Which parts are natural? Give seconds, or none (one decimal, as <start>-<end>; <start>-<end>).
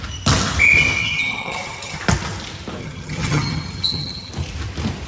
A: 0.0-1.0; 2.0-2.8; 4.3-5.1